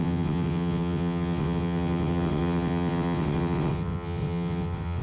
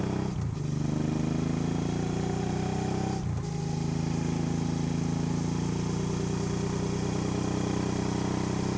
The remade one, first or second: first